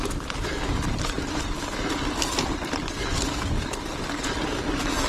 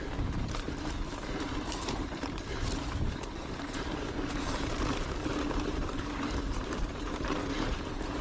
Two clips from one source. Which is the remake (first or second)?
second